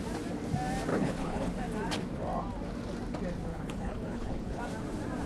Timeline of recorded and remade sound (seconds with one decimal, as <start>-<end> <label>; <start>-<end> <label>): 0.0-0.9 recorded; 0.9-1.5 remade; 1.5-3.5 recorded; 3.5-4.6 remade; 4.6-5.3 recorded